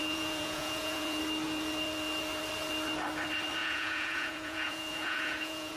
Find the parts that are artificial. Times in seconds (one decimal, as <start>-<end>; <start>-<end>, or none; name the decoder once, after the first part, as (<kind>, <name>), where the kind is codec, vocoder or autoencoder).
0.0-1.2 (vocoder, Vocos); 3.6-5.8